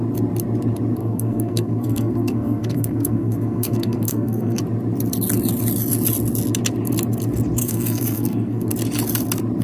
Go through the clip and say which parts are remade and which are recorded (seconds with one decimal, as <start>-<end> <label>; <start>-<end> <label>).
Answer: 0.0-1.0 recorded; 1.0-4.6 remade; 4.6-7.6 recorded; 7.6-8.7 remade; 8.7-9.6 recorded